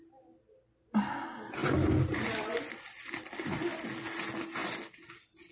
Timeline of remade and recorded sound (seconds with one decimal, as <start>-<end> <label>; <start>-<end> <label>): 0.0-1.6 recorded; 1.6-3.6 remade; 3.6-4.6 recorded; 4.6-5.5 remade